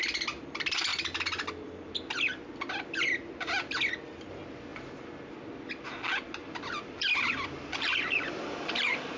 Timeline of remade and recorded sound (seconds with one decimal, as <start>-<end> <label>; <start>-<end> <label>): 0.0-6.4 recorded; 6.4-9.2 remade